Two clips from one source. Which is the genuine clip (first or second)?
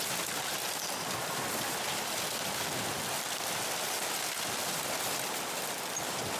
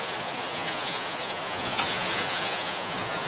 first